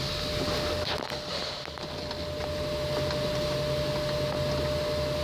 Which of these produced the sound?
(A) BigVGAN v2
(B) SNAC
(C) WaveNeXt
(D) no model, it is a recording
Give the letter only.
D